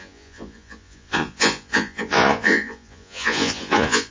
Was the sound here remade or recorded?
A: remade